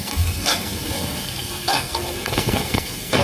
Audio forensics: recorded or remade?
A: remade